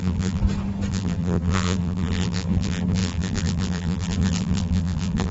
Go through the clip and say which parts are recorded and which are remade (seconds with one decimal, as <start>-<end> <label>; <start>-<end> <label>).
0.0-0.4 remade; 0.4-0.9 recorded; 0.9-5.3 remade